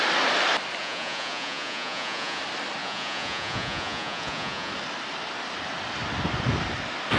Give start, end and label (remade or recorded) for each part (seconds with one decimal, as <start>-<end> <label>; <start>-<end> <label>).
0.0-0.8 recorded; 0.8-2.4 remade; 2.4-2.8 recorded; 2.8-4.7 remade; 4.7-7.2 recorded